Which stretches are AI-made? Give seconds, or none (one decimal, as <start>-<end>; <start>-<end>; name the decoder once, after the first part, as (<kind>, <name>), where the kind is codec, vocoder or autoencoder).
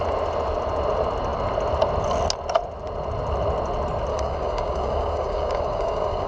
4.1-6.3 (codec, DAC)